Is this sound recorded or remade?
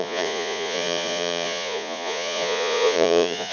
remade